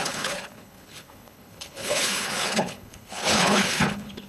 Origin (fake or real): fake